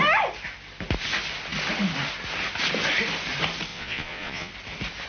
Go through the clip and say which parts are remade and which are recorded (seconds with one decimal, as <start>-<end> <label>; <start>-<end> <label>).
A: 0.0-3.7 recorded; 3.7-4.5 remade; 4.5-5.1 recorded